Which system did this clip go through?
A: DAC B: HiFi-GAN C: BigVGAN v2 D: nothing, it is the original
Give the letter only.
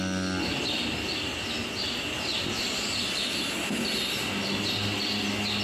D